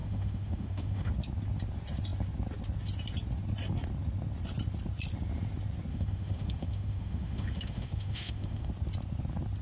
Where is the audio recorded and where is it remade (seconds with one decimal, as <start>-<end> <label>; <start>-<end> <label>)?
0.0-1.1 remade; 1.1-5.9 recorded; 5.9-8.7 remade; 8.7-9.6 recorded